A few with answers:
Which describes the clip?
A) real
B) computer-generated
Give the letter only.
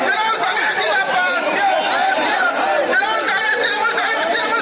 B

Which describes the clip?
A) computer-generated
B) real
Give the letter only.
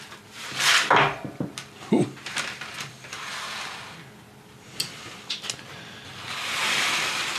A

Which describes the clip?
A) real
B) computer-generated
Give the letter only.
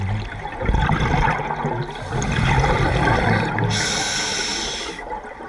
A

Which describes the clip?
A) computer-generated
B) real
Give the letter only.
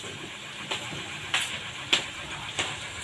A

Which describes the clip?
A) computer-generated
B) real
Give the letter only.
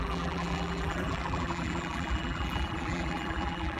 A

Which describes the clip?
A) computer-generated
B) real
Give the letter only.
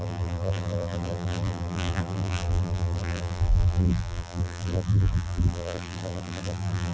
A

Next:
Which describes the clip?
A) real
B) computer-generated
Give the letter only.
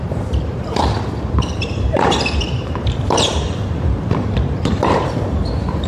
B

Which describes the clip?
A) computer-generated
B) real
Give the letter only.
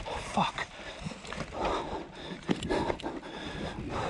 A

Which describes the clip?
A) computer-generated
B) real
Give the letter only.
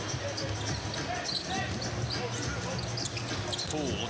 B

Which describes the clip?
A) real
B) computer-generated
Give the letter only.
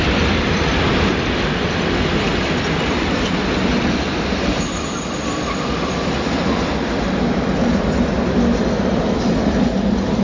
B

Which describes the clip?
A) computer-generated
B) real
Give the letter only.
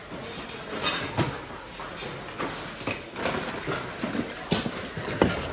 B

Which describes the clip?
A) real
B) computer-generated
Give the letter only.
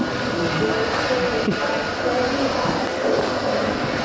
A